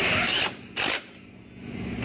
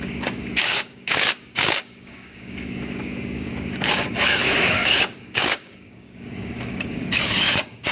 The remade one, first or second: second